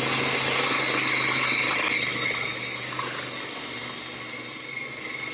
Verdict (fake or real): real